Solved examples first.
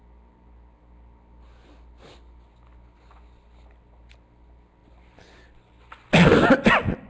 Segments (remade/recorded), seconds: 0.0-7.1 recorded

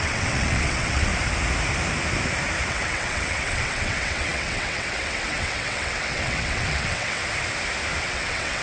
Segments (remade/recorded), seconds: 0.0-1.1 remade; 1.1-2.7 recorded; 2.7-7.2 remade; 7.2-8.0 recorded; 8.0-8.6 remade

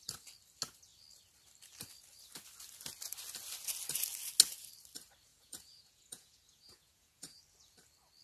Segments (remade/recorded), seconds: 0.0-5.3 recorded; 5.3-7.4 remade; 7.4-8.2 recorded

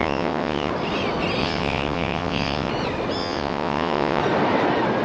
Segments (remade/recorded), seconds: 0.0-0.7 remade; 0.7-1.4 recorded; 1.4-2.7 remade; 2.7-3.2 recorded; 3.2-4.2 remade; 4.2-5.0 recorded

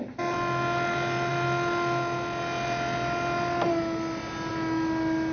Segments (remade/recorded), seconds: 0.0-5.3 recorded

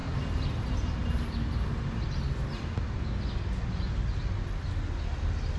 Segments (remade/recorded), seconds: 0.0-5.6 recorded

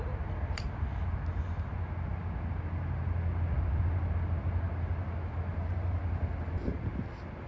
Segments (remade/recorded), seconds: 0.0-5.5 recorded; 5.5-6.0 remade; 6.0-7.5 recorded

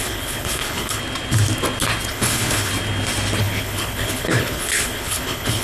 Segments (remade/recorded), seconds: 0.0-1.0 remade; 1.0-2.1 recorded; 2.1-2.7 remade; 2.7-3.4 recorded; 3.4-5.6 remade